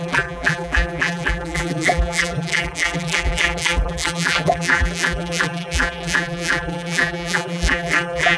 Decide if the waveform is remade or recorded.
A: remade